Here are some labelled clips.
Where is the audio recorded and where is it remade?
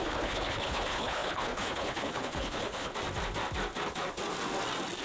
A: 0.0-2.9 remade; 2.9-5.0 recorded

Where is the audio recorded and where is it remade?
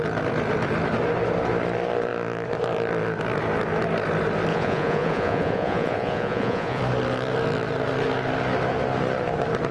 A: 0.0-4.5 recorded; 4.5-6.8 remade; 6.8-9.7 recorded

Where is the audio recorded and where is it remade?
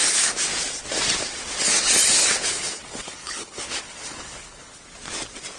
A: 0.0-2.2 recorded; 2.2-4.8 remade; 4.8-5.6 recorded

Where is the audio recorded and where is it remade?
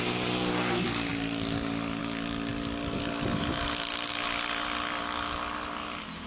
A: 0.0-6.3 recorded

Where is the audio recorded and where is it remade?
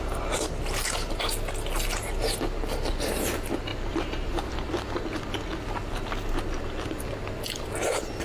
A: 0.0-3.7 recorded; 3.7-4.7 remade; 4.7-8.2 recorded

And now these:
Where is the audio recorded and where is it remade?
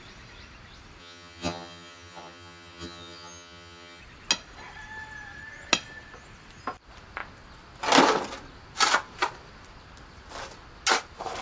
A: 0.0-1.0 recorded; 1.0-4.0 remade; 4.0-11.4 recorded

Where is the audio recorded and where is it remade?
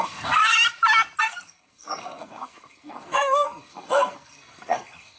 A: 0.0-0.4 remade; 0.4-1.2 recorded; 1.2-5.2 remade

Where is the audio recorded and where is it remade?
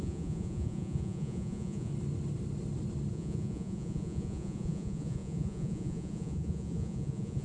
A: 0.0-1.9 remade; 1.9-3.1 recorded; 3.1-7.4 remade